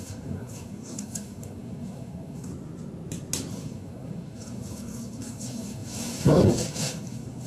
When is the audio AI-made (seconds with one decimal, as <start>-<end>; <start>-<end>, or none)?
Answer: 0.0-2.5; 3.5-7.5